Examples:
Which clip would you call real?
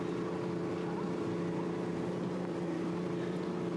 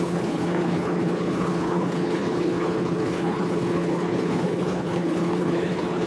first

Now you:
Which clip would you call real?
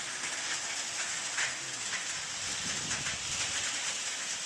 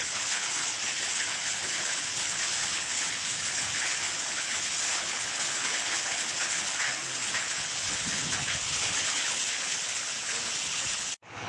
first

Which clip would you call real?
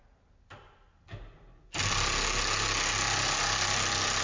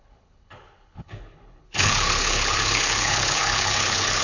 first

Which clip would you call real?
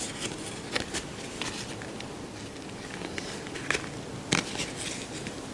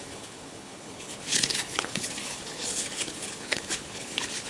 first